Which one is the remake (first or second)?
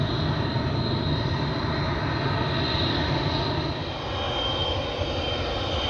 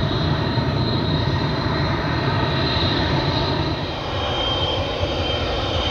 second